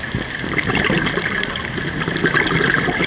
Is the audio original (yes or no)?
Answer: yes